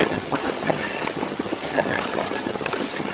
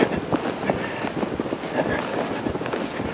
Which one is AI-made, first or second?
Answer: first